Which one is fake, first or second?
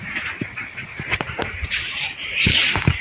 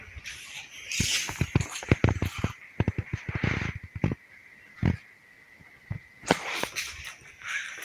first